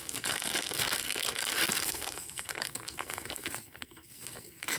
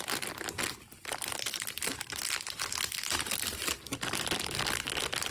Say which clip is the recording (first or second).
second